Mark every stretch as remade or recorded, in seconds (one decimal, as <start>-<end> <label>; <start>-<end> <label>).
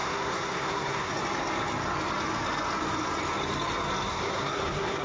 0.0-1.1 remade; 1.1-4.1 recorded; 4.1-5.0 remade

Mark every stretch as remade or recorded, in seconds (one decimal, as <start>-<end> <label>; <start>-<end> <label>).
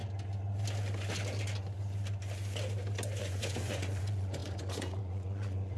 0.0-3.2 recorded; 3.2-5.8 remade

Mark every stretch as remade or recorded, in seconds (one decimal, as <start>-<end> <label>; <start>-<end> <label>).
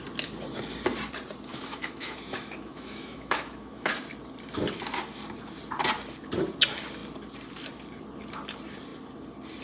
0.0-1.5 recorded; 1.5-3.9 remade; 3.9-9.6 recorded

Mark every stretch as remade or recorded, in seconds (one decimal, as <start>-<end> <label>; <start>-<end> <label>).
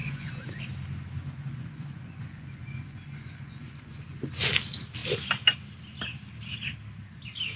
0.0-0.6 remade; 0.6-1.4 recorded; 1.4-4.3 remade; 4.3-7.6 recorded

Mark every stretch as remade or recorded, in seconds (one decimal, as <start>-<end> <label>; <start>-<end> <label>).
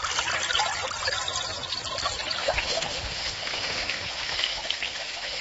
0.0-2.4 recorded; 2.4-5.4 remade